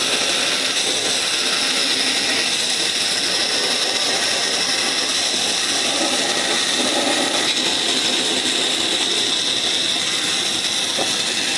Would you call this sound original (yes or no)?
yes